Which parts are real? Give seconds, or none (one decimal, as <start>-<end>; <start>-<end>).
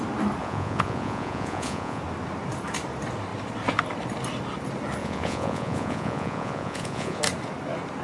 0.0-0.4; 2.0-5.0; 7.2-8.0